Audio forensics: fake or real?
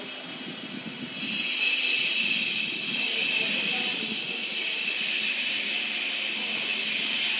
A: real